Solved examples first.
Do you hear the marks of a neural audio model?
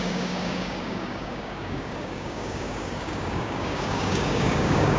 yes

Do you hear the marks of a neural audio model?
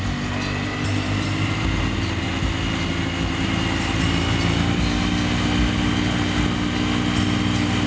no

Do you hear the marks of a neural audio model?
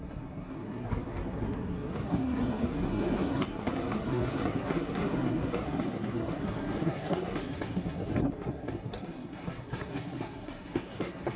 yes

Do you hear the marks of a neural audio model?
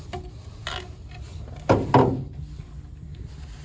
no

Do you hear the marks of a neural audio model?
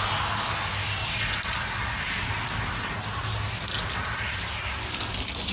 no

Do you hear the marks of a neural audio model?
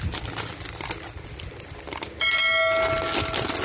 no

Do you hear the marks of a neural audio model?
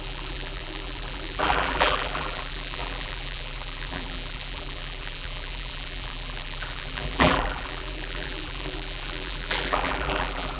yes